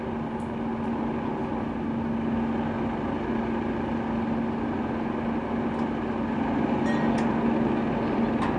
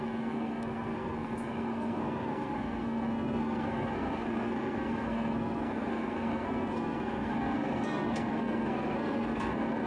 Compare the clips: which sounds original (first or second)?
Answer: first